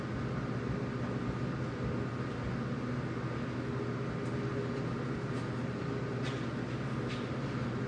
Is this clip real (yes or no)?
yes